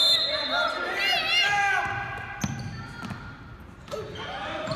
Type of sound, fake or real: real